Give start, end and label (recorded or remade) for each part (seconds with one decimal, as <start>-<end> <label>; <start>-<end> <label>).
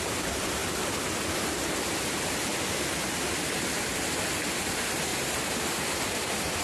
0.0-5.1 recorded; 5.1-6.6 remade